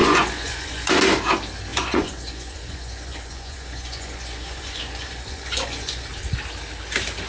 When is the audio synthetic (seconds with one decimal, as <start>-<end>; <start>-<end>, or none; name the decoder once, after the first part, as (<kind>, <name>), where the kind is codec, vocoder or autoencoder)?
0.0-0.9 (vocoder, Vocos); 1.7-6.1